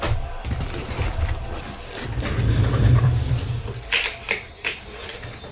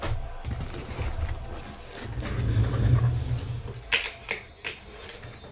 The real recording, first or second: second